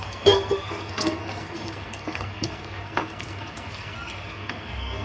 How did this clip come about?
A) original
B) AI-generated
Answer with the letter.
B